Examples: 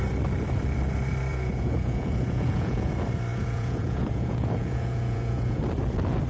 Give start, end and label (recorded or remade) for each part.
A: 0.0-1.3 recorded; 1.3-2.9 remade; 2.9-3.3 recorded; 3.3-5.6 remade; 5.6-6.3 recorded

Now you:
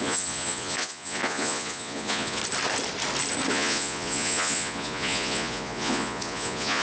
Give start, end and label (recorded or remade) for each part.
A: 0.0-2.4 remade; 2.4-3.5 recorded; 3.5-6.8 remade